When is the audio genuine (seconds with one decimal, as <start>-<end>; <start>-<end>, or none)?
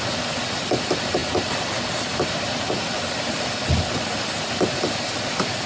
0.0-5.7